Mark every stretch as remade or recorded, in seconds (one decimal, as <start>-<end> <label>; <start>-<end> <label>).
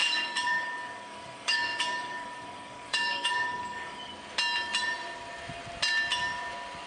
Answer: 0.0-4.1 remade; 4.1-6.9 recorded